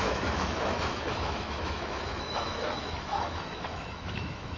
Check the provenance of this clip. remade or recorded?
remade